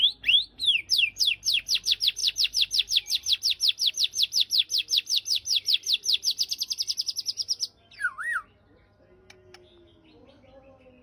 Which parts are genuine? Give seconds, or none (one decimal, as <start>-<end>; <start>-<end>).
0.0-11.0